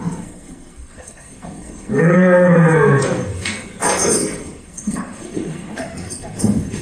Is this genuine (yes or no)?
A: no